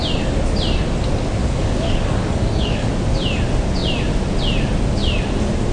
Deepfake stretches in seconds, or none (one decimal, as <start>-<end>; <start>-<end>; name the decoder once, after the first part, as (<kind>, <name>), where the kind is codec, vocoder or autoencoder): 1.4-2.9 (codec, DAC)